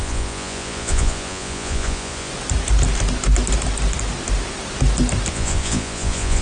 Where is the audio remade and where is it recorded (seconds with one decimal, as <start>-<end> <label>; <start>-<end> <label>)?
0.0-2.3 remade; 2.3-5.3 recorded; 5.3-6.4 remade